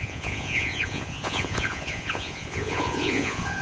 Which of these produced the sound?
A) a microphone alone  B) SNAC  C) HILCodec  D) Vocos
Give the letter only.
D